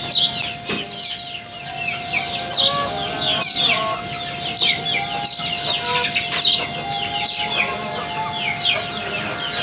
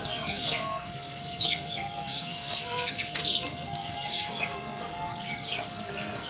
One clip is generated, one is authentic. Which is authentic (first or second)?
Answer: first